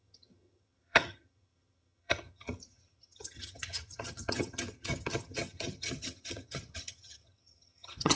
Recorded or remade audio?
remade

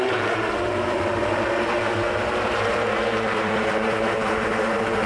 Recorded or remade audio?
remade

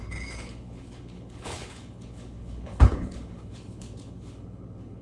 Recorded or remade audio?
remade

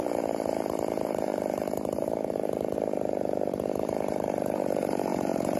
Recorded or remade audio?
remade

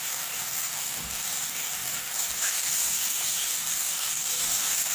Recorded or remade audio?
remade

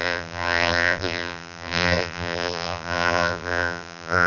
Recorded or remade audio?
remade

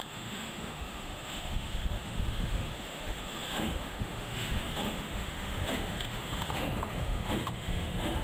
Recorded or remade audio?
remade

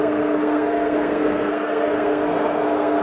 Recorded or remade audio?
remade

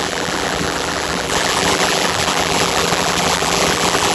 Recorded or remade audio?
remade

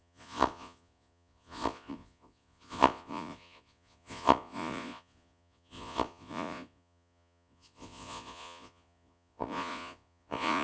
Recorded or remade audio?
remade